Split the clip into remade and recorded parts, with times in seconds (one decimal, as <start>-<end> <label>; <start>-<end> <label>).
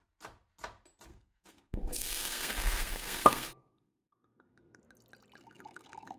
0.0-1.1 recorded; 1.1-4.8 remade; 4.8-5.4 recorded; 5.4-6.2 remade